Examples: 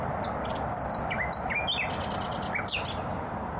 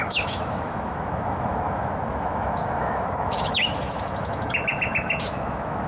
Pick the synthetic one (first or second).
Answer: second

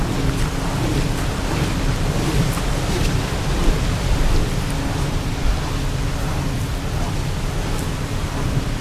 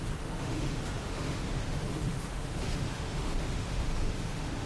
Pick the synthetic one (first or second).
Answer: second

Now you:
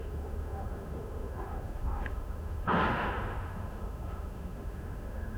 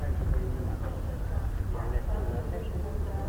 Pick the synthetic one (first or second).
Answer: first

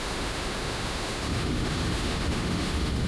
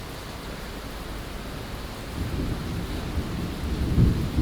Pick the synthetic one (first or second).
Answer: first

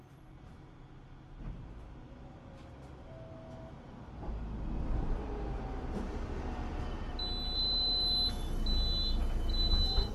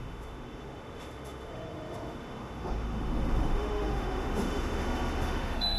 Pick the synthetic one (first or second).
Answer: second